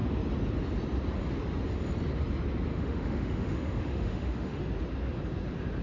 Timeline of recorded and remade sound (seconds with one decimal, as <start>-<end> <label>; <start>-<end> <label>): 0.0-2.7 recorded; 2.7-4.6 remade; 4.6-5.8 recorded